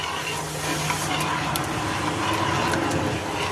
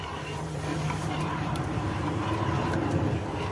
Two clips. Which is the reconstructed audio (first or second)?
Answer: second